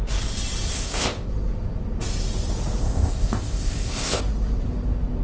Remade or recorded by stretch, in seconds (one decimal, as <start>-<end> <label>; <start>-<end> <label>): 0.0-0.7 recorded; 0.7-1.3 remade; 1.3-2.8 recorded; 2.8-4.2 remade; 4.2-5.2 recorded